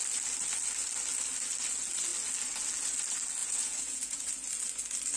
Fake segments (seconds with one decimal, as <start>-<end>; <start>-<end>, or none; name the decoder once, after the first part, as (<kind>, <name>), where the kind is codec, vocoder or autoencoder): 3.4-4.3 (vocoder, Vocos)